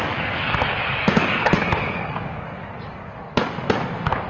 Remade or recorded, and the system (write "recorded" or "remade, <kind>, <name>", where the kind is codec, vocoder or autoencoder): remade, codec, DAC